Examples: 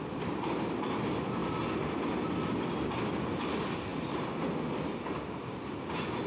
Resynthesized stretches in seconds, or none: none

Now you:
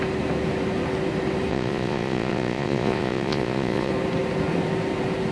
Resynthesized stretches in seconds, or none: 1.5-3.9 (vocoder, Vocos)

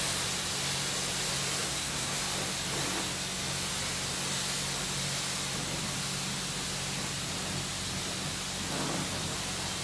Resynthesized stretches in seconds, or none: 1.6-2.2 (codec, SNAC)

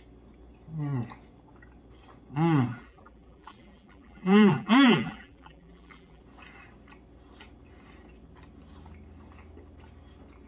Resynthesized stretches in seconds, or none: 2.7-6.2 (vocoder, BigVGAN v2)

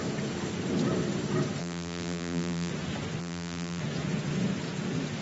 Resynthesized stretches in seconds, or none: 1.6-2.7 (vocoder, BigVGAN v2); 3.2-3.8

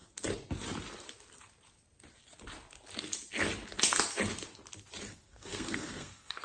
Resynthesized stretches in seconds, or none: 5.1-6.4 (codec, SNAC)